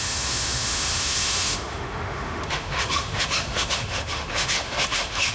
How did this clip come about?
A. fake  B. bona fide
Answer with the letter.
A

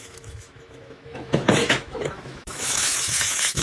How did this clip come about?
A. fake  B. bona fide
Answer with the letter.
A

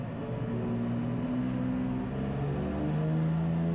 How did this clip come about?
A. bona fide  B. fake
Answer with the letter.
A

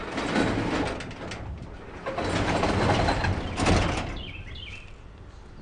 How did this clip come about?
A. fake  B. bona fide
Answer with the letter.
B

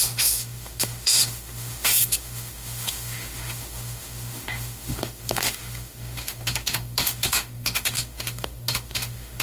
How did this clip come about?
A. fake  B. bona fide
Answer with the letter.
A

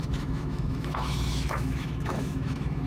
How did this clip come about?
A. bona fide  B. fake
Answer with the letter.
B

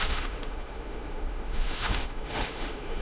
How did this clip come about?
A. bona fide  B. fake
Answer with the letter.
B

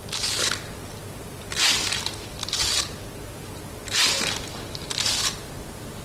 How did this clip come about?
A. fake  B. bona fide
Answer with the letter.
B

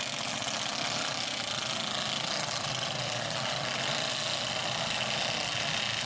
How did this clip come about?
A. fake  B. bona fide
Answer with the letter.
B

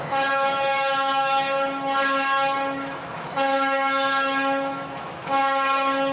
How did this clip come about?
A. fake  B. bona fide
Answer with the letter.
A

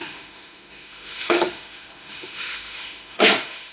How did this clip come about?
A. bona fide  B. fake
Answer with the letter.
B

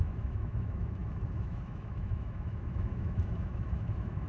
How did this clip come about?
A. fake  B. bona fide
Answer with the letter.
A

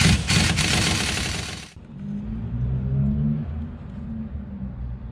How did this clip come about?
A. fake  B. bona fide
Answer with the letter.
B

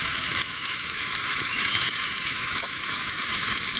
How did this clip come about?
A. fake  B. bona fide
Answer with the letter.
A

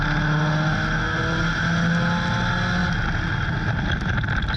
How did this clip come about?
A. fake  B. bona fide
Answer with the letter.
B